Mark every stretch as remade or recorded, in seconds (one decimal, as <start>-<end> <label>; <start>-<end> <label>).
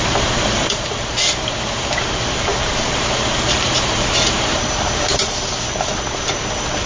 0.0-6.9 remade